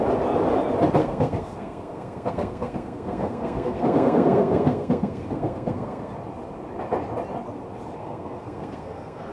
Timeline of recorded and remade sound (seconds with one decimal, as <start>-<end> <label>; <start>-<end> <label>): 0.0-1.0 recorded; 1.0-6.1 remade; 6.1-8.0 recorded; 8.0-9.3 remade